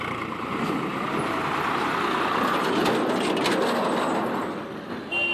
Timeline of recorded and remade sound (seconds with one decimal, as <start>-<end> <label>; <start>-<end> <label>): 0.0-5.3 recorded

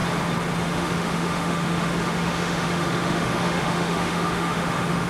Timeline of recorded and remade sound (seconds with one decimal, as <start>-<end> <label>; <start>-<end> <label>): 0.0-0.6 recorded; 0.6-5.1 remade

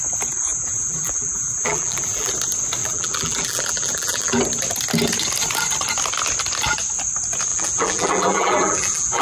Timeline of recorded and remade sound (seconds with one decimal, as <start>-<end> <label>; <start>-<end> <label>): 0.0-0.5 recorded; 0.5-2.3 remade; 2.3-2.8 recorded; 2.8-4.4 remade; 4.4-7.5 recorded; 7.5-9.2 remade

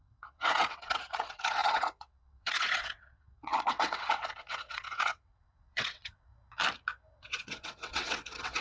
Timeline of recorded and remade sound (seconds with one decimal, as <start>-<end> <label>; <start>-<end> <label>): 0.0-6.3 remade; 6.3-7.2 recorded; 7.2-8.6 remade

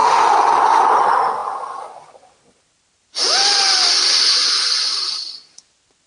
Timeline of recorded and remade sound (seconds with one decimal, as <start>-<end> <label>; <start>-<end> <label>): 0.0-6.1 recorded

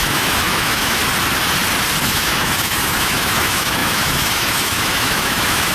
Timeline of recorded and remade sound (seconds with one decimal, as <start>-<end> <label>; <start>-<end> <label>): 0.0-1.0 remade; 1.0-2.0 recorded; 2.0-5.7 remade